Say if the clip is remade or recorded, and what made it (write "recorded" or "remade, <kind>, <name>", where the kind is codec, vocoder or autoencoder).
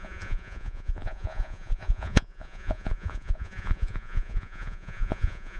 remade, vocoder, Vocos